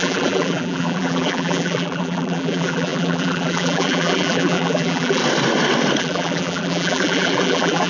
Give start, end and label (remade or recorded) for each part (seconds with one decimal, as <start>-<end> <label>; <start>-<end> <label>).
0.0-5.2 remade; 5.2-6.0 recorded; 6.0-7.9 remade